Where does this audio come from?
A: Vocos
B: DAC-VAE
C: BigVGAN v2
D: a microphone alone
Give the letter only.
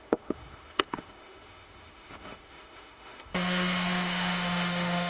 B